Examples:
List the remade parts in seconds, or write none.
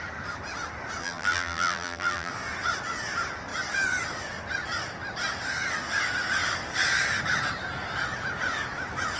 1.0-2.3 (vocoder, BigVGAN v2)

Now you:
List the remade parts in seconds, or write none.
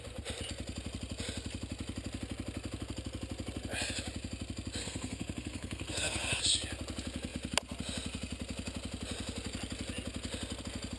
4.8-6.4 (codec, SNAC)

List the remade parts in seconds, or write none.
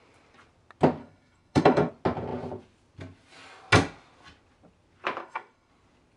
1.0-1.9 (codec, SNAC); 5.2-5.7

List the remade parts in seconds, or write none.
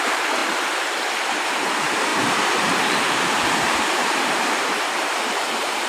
0.0-5.9 (vocoder, BigVGAN v2)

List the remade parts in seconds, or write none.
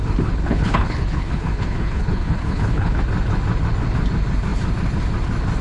0.4-3.0 (codec, HILCodec)